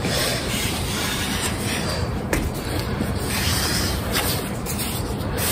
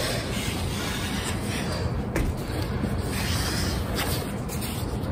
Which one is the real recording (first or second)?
second